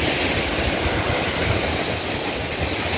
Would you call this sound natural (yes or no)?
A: yes